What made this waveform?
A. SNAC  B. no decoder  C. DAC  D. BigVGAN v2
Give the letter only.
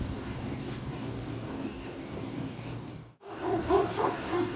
C